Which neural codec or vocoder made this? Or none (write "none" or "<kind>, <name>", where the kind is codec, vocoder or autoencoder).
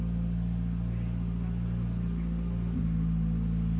none